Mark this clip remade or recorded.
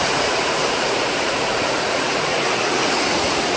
remade